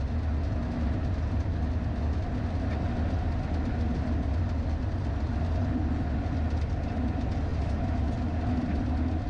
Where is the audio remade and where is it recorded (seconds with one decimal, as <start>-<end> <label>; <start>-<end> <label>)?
0.0-9.3 recorded